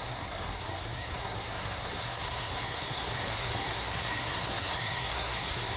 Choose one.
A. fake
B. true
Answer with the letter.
A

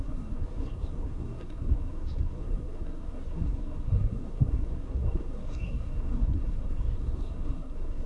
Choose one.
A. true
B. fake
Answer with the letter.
B